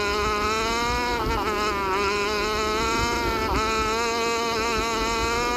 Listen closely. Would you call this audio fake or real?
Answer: real